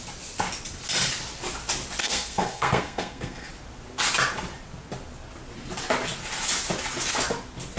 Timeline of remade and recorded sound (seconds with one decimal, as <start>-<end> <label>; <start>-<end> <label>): 0.0-2.0 recorded; 2.0-3.5 remade; 3.5-7.8 recorded